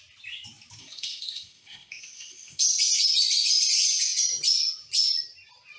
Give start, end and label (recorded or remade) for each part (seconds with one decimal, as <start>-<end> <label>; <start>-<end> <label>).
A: 0.0-0.8 recorded; 0.8-2.6 remade; 2.6-5.8 recorded